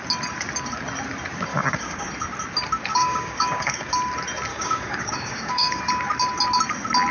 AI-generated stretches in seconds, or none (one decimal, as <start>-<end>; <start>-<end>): 1.5-2.1; 2.9-3.9; 4.5-5.8

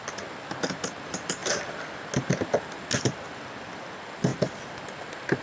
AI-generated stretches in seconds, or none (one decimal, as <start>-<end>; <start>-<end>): none

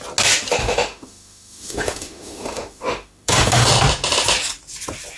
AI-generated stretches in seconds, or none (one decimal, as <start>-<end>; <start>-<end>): 0.6-3.7

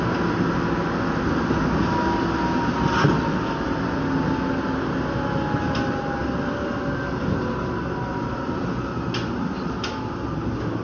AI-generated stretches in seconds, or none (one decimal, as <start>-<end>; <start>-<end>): none

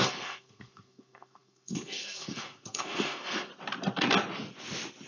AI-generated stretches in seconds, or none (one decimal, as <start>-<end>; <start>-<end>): 0.0-3.5